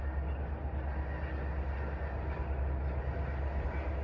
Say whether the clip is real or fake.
real